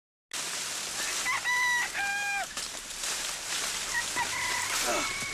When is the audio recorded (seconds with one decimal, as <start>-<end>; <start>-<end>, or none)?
0.0-2.1; 2.6-5.3